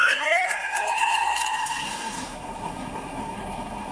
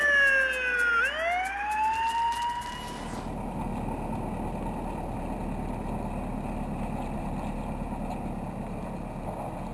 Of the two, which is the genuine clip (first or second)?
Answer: second